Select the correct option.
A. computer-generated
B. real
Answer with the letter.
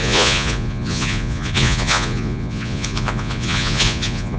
A